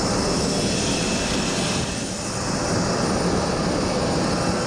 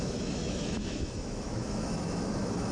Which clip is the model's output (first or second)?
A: second